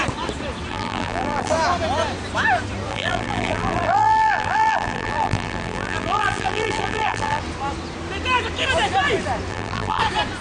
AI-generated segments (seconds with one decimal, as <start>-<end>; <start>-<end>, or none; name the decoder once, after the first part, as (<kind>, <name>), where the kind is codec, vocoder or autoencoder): 0.7-1.5 (vocoder, BigVGAN v2); 2.9-7.4; 9.5-10.0